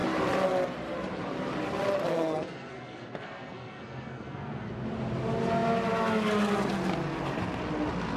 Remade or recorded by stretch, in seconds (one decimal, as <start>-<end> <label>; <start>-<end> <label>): 0.0-2.1 recorded; 2.1-4.7 remade; 4.7-8.2 recorded

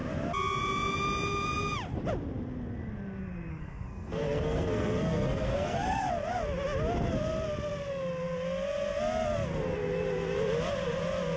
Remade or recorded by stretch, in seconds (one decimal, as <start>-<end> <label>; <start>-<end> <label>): 0.0-3.5 recorded; 3.5-6.1 remade; 6.1-11.4 recorded

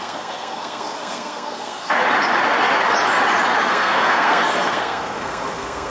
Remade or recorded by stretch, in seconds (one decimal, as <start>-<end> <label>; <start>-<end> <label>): 0.0-2.0 remade; 2.0-3.7 recorded; 3.7-5.9 remade

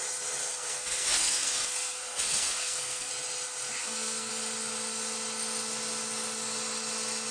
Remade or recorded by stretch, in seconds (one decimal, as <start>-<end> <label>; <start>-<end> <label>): 0.0-0.4 recorded; 0.4-3.1 remade; 3.1-3.8 recorded; 3.8-4.3 remade; 4.3-7.3 recorded

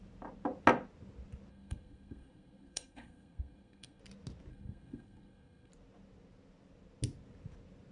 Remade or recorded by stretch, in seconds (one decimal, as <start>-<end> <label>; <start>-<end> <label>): 0.0-1.5 recorded; 1.5-4.0 remade; 4.0-4.5 recorded; 4.5-5.7 remade; 5.7-7.9 recorded

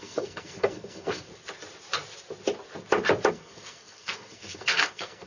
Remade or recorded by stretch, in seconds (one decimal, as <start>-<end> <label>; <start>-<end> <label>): 0.0-1.3 remade; 1.3-3.3 recorded; 3.3-5.3 remade

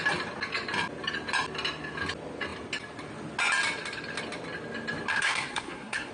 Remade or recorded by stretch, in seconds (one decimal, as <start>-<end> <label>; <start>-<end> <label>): 0.0-5.1 recorded; 5.1-6.1 remade

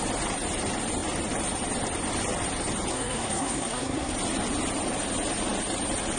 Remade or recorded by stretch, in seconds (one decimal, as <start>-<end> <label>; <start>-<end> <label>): 0.0-2.9 recorded; 2.9-4.1 remade; 4.1-6.2 recorded